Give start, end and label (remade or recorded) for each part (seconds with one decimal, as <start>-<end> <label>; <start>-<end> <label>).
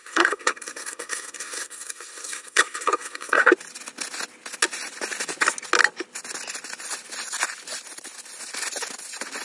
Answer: 0.0-3.5 remade; 3.5-9.4 recorded